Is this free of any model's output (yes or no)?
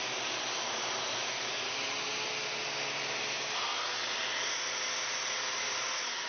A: yes